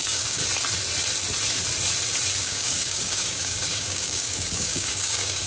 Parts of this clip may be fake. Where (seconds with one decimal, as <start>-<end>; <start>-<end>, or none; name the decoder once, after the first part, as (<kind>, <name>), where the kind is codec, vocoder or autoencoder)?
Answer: 0.0-0.4 (codec, DAC); 2.4-5.5